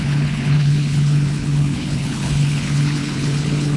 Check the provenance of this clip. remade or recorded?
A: remade